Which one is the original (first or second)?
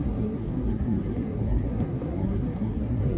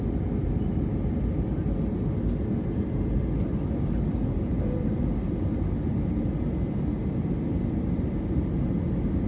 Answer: second